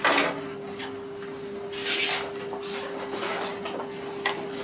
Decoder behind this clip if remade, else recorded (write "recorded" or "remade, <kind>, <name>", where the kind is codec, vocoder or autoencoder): recorded